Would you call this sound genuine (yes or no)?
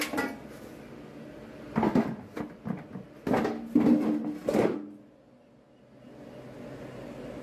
yes